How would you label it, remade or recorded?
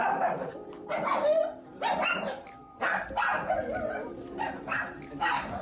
remade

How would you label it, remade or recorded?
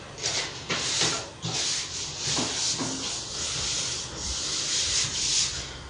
recorded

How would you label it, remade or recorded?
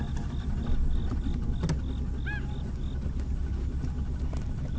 recorded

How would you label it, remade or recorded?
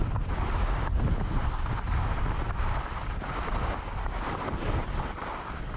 recorded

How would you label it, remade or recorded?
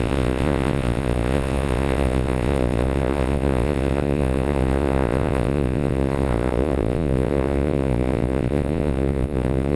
remade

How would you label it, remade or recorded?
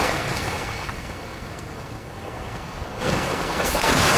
remade